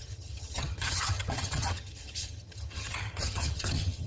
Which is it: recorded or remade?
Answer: remade